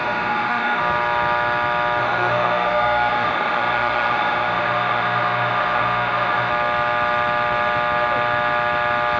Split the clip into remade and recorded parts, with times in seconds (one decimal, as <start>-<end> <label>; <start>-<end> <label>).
0.0-0.8 remade; 0.8-2.0 recorded; 2.0-6.5 remade; 6.5-9.2 recorded